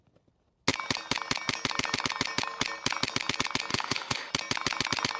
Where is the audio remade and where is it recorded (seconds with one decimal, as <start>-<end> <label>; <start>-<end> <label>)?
0.0-3.7 recorded; 3.7-4.3 remade; 4.3-5.2 recorded